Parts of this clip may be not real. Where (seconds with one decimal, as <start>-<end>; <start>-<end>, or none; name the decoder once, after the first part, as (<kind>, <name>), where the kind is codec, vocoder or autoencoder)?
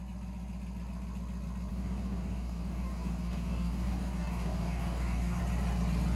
1.7-5.4 (codec, DAC)